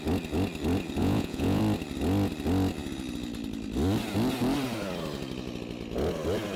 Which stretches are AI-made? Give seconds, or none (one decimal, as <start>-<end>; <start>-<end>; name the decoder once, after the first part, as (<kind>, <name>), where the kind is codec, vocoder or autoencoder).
1.0-1.6 (vocoder, Vocos)